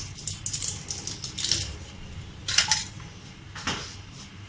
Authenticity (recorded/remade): recorded